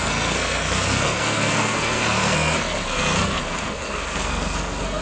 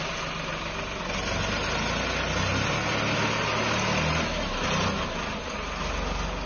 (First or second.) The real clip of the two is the second